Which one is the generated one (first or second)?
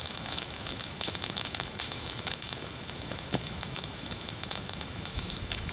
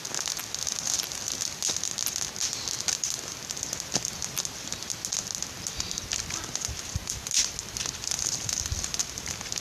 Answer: first